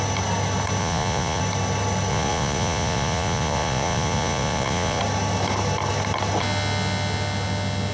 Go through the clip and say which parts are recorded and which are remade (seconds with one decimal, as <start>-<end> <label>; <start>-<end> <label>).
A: 0.0-0.8 recorded; 0.8-1.4 remade; 1.4-2.1 recorded; 2.1-5.0 remade; 5.0-7.9 recorded